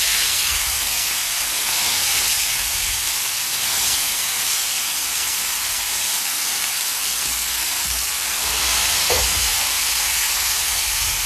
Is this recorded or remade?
remade